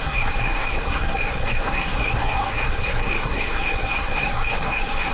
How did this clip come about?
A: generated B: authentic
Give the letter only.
A